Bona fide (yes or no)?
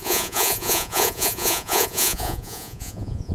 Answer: no